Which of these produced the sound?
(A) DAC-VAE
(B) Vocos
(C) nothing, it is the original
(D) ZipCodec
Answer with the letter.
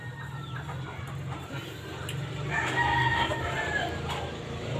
C